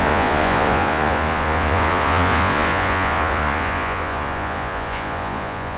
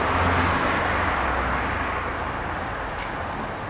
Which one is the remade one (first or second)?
first